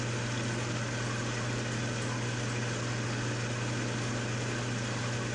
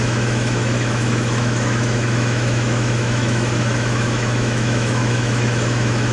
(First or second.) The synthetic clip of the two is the second